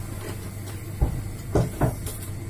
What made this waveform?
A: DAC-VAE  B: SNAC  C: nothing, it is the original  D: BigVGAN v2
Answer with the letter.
C